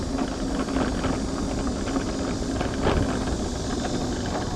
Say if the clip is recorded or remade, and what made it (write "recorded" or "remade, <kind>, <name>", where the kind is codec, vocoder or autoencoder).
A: recorded